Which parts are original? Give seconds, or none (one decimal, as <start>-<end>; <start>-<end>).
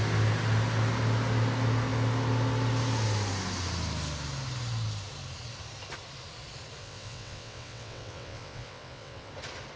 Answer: 0.0-6.8; 9.3-9.8